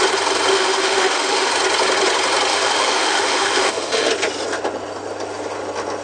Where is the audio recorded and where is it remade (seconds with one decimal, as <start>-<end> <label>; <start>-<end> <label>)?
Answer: 0.0-0.5 recorded; 0.5-1.5 remade; 1.5-2.5 recorded; 2.5-4.1 remade; 4.1-6.0 recorded